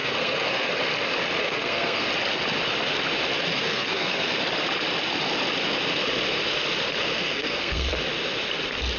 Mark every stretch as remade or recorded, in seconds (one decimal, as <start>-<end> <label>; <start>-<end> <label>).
0.0-0.7 remade; 0.7-1.4 recorded; 1.4-2.1 remade; 2.1-3.5 recorded; 3.5-4.4 remade; 4.4-7.1 recorded; 7.1-7.9 remade; 7.9-9.0 recorded